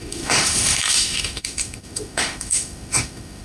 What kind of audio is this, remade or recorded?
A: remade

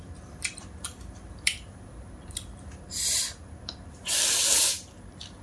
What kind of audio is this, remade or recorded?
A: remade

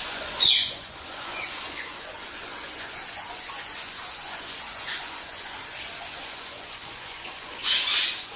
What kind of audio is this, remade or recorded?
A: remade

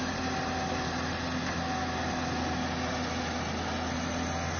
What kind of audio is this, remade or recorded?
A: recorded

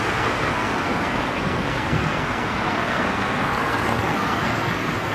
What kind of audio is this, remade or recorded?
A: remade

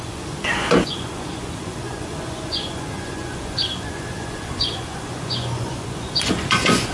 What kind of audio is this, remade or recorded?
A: remade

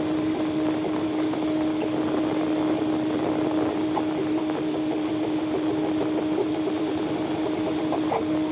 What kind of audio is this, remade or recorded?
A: recorded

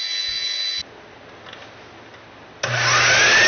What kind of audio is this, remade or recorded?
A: recorded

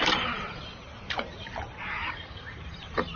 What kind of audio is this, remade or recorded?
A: remade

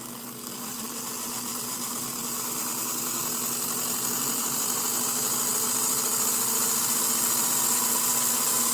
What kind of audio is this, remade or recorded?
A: recorded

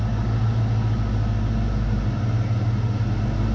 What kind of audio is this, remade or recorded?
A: recorded